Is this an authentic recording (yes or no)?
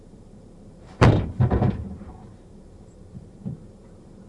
no